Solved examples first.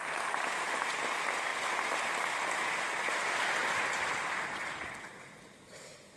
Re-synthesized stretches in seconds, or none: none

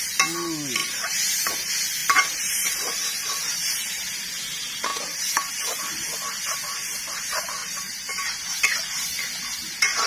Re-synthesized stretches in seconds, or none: 0.8-1.5 (vocoder, BigVGAN v2); 2.0-3.7; 4.9-5.5; 7.6-8.6

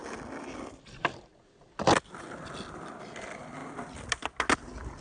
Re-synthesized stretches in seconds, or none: none

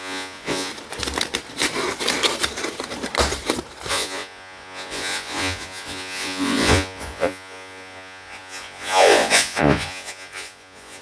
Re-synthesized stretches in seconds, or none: 0.0-0.7 (vocoder, Vocos); 3.9-11.0